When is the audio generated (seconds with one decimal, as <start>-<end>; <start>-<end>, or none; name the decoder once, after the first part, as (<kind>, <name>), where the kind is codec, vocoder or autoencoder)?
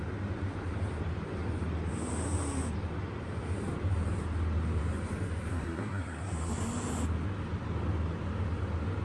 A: 5.5-6.5 (codec, SNAC)